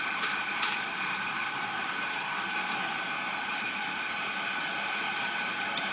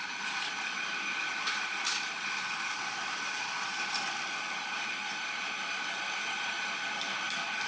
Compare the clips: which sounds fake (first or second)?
first